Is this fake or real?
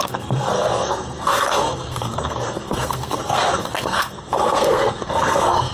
fake